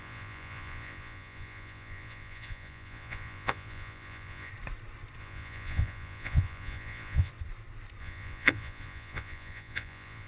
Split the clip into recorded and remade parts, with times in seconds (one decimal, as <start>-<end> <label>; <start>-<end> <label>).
0.0-4.5 remade; 4.5-5.2 recorded; 5.2-7.3 remade; 7.3-8.0 recorded; 8.0-10.3 remade